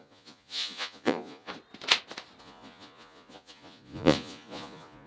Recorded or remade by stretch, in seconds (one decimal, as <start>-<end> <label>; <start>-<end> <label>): 0.0-1.5 remade; 1.5-2.4 recorded; 2.4-5.1 remade